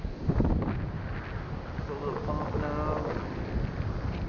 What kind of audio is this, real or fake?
real